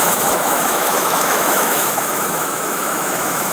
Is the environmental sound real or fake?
fake